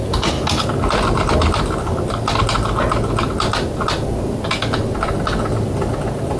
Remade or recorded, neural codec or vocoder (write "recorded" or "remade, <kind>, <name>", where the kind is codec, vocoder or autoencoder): recorded